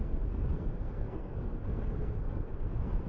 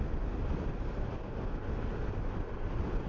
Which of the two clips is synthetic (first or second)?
first